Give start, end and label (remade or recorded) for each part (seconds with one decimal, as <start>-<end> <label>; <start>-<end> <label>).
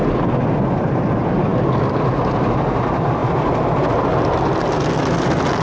0.0-5.6 recorded